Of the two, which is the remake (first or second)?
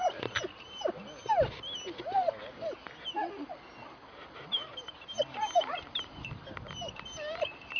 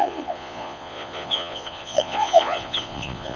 second